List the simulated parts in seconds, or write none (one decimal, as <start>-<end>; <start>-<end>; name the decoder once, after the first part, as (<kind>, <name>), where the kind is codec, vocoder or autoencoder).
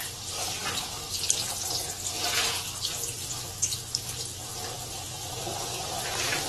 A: none